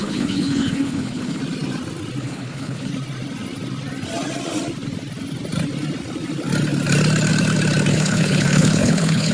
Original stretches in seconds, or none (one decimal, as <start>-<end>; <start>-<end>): 1.4-2.2; 2.9-7.9